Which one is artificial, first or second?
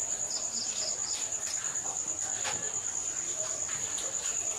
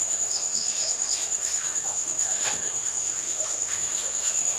second